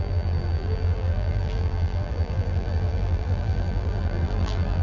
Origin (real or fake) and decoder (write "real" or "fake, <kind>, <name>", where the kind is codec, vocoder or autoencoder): fake, vocoder, BigVGAN v2